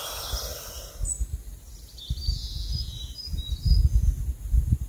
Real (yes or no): yes